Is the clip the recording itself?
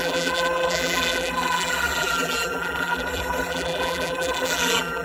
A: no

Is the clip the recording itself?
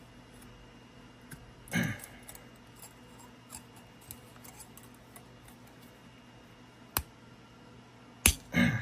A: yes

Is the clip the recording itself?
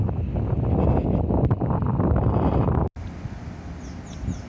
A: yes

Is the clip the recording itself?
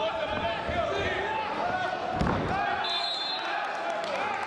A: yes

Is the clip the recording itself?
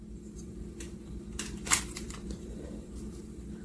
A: no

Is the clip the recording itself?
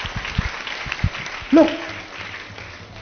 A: yes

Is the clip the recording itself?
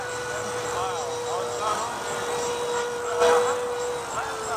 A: no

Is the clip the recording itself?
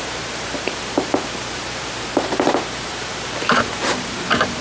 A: no